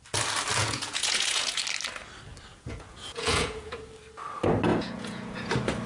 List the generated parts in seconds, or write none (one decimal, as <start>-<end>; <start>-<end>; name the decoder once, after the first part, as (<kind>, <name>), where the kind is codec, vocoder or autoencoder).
0.6-1.6 (vocoder, Vocos); 2.5-3.8; 4.7-5.5